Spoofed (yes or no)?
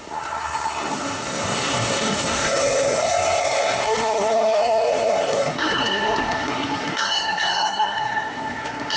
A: yes